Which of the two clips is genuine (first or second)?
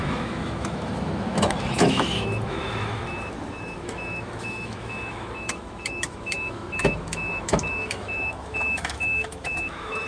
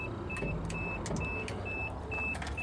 second